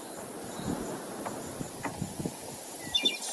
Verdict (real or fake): real